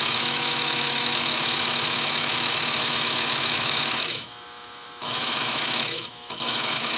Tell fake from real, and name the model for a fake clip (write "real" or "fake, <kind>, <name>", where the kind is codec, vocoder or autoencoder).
fake, autoencoder, DAC-VAE